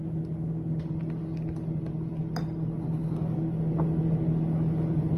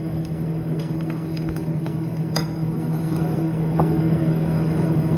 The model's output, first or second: second